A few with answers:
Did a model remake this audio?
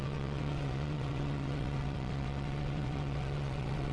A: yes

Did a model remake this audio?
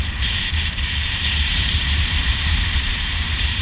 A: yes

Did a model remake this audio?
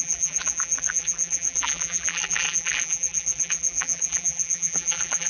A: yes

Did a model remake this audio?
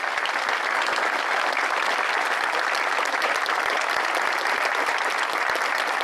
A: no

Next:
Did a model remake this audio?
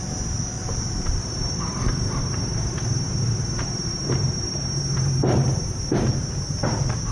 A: yes